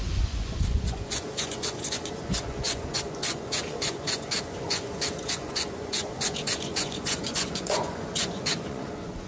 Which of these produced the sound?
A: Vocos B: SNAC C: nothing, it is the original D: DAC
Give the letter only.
A